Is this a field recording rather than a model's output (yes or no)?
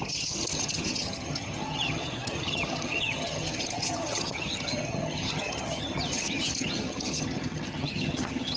no